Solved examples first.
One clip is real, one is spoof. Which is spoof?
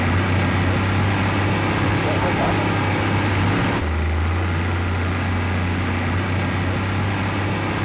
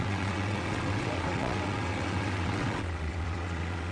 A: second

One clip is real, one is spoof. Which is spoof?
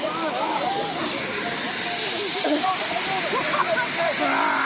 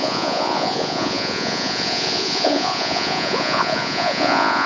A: second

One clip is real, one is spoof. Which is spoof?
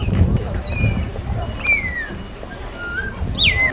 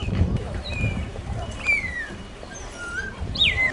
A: second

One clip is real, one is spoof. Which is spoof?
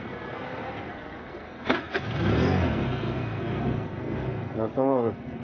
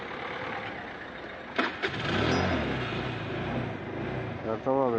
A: first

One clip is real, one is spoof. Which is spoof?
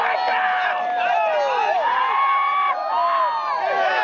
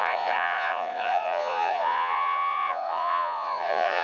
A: second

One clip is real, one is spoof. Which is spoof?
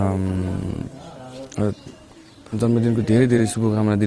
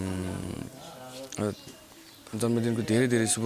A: first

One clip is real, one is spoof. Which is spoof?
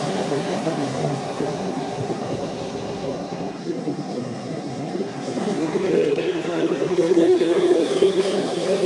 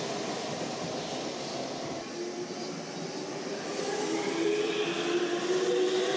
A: first